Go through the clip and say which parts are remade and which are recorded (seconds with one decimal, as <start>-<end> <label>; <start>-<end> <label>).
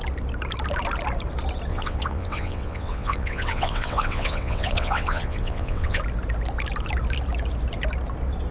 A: 0.0-1.7 recorded; 1.7-6.0 remade; 6.0-8.5 recorded